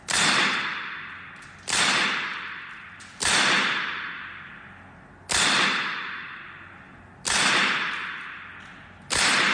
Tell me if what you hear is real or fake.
real